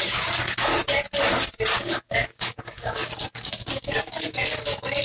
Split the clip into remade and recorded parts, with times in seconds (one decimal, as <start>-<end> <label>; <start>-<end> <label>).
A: 0.0-0.7 remade; 0.7-1.8 recorded; 1.8-5.0 remade